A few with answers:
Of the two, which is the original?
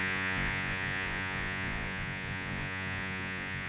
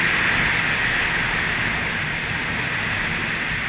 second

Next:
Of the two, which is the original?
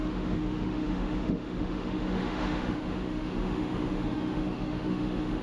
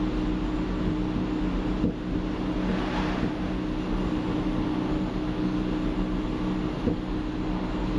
second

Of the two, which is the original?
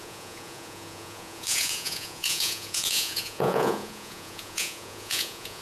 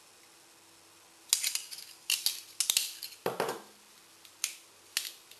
second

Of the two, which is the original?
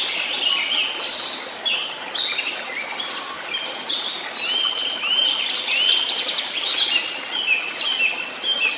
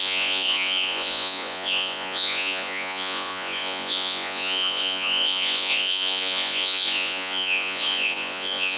first